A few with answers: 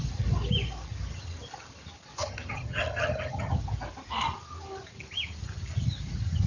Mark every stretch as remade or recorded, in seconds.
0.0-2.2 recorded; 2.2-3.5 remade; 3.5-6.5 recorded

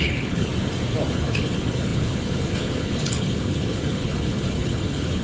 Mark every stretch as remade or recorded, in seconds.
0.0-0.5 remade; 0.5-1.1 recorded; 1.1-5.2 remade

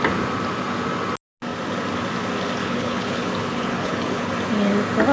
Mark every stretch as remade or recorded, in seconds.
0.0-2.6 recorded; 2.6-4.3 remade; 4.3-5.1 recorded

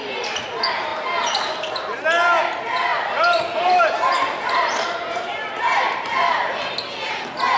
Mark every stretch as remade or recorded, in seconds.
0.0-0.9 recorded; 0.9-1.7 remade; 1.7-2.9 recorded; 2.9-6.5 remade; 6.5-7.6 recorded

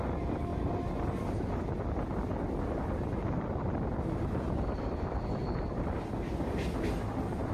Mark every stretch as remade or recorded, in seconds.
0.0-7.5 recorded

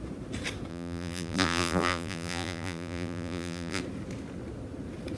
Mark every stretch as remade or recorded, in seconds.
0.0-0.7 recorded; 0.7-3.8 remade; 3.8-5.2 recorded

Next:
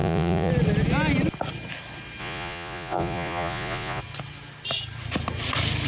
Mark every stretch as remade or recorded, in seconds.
0.0-0.5 remade; 0.5-2.2 recorded; 2.2-4.0 remade; 4.0-5.9 recorded